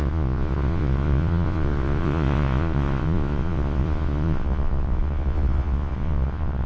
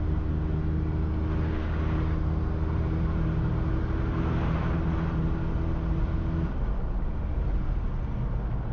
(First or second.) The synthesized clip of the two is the first